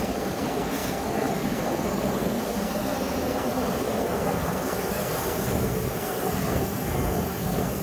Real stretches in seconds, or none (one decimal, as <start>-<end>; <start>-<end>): none